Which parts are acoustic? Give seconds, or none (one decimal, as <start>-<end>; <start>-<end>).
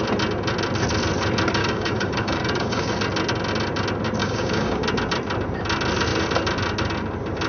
0.0-1.6; 2.9-4.2; 4.8-7.5